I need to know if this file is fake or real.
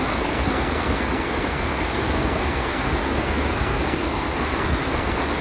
fake